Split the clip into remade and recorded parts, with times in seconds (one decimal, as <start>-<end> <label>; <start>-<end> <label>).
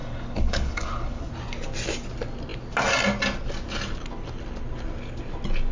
0.0-1.3 remade; 1.3-5.7 recorded